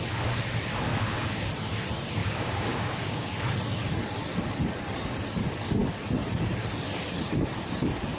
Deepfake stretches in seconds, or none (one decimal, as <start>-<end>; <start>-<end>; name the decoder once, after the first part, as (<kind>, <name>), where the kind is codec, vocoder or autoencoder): 0.9-1.5 (codec, DAC); 2.2-3.4